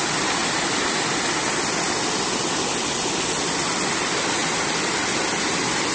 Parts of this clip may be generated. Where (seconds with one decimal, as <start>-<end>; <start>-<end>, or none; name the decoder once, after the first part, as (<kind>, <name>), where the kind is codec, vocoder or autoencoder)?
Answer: none